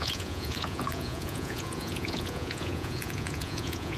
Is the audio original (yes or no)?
no